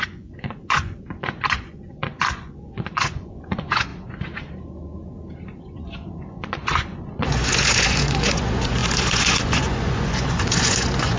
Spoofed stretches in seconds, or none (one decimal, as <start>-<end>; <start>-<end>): 0.0-3.9; 5.6-11.2